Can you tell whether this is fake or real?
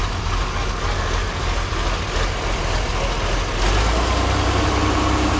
real